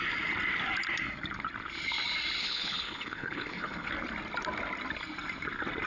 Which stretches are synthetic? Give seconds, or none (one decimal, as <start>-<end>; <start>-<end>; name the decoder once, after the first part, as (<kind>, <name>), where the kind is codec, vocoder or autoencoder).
2.4-3.9 (codec, HILCodec)